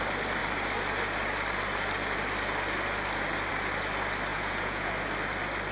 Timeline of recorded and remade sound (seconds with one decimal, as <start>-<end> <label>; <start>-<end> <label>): 0.0-4.3 recorded; 4.3-4.9 remade; 4.9-5.7 recorded